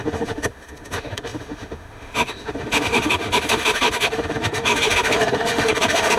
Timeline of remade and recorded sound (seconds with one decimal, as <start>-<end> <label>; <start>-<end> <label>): 0.0-6.2 remade